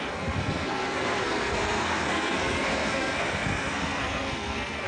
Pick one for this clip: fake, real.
fake